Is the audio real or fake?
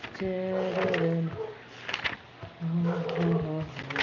real